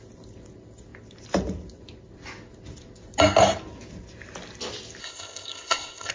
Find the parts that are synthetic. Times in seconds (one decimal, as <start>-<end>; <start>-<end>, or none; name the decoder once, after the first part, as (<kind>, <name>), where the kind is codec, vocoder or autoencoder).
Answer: 5.0-6.1 (codec, ZipCodec)